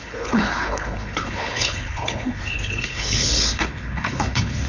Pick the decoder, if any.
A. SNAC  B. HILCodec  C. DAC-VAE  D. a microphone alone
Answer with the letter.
B